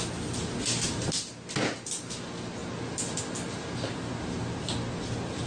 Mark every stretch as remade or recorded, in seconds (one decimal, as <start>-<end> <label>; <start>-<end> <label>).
0.0-5.5 recorded